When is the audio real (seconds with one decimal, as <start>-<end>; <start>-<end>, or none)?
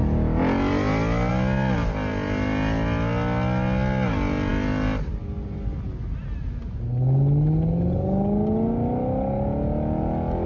0.0-10.5